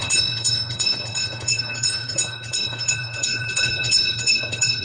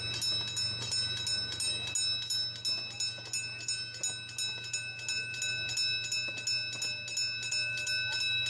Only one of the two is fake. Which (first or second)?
first